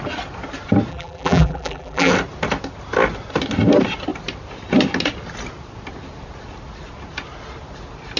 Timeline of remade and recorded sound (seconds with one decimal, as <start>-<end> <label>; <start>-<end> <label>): 0.0-0.9 recorded; 0.9-2.1 remade; 2.1-8.2 recorded